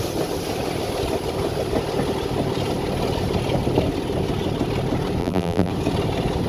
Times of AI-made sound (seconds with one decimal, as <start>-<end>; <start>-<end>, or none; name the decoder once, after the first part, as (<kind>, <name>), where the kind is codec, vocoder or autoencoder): 5.2-5.7 (vocoder, BigVGAN v2)